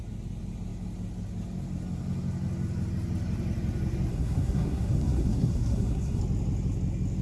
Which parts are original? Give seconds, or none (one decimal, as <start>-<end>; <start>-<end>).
0.0-4.1; 6.2-7.2